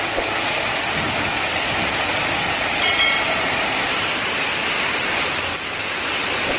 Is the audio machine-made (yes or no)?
yes